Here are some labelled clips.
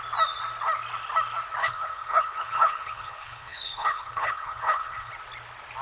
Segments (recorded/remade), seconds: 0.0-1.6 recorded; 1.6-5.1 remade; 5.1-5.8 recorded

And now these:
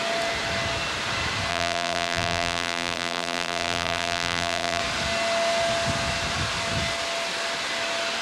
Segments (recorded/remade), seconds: 0.0-1.5 recorded; 1.5-4.8 remade; 4.8-8.2 recorded